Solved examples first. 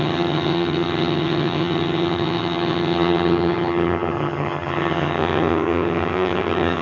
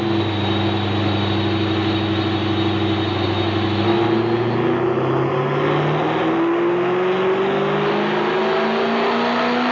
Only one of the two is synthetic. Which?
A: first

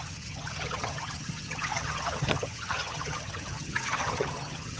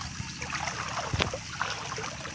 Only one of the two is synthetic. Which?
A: first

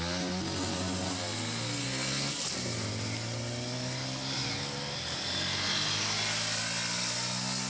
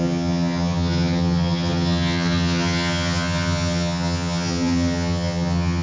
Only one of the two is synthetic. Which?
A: second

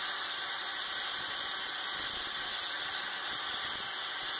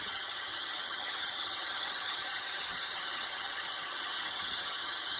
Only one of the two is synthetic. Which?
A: second